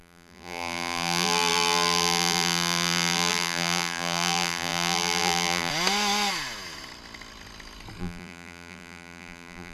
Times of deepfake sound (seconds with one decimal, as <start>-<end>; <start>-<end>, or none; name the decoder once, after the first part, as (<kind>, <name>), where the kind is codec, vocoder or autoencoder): 0.0-5.7 (vocoder, BigVGAN v2); 8.0-9.7